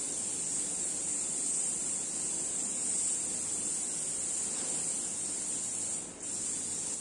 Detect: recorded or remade recorded